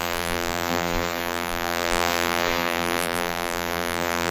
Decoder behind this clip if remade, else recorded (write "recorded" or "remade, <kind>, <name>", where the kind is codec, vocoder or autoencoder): remade, vocoder, BigVGAN v2